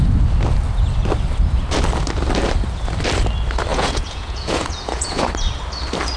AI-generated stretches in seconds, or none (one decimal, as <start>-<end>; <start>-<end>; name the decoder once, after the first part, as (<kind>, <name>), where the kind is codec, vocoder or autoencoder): 3.7-5.3 (vocoder, Vocos)